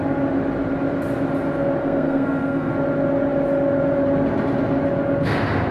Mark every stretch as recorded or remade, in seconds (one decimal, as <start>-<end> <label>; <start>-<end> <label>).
0.0-1.8 recorded; 1.8-2.7 remade; 2.7-5.7 recorded

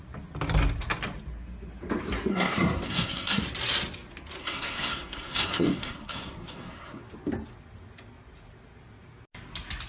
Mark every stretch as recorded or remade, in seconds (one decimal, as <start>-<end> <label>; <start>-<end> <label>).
0.0-2.3 recorded; 2.3-3.4 remade; 3.4-4.4 recorded; 4.4-7.0 remade; 7.0-9.9 recorded

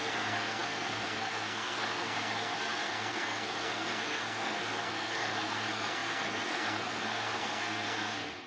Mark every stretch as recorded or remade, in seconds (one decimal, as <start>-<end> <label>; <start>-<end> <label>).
0.0-8.5 remade

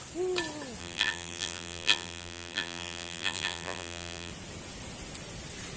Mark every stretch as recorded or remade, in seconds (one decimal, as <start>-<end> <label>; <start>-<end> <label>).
0.0-0.8 recorded; 0.8-4.3 remade; 4.3-5.8 recorded

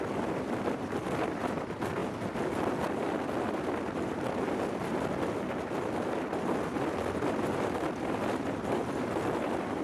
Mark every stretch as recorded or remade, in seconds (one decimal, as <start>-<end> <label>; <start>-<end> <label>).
0.0-2.0 remade; 2.0-3.5 recorded; 3.5-9.8 remade